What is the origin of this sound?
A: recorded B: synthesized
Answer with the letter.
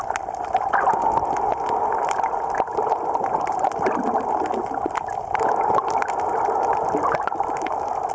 A